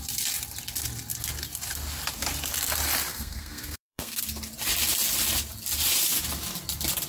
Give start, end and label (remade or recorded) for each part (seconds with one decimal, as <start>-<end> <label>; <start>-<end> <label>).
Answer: 0.0-3.1 recorded; 3.1-4.2 remade; 4.2-7.1 recorded